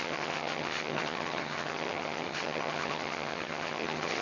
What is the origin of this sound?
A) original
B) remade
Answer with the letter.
B